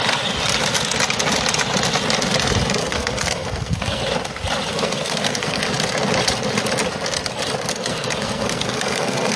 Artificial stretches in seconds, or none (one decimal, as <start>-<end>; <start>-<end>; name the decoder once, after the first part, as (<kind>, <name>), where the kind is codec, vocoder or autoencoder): 2.8-4.0 (codec, SNAC); 4.7-5.6; 7.7-9.4